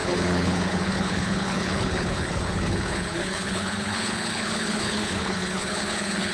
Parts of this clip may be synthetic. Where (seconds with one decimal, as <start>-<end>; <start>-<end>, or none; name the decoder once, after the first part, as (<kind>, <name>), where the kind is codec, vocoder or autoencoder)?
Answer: 0.0-6.3 (codec, HILCodec)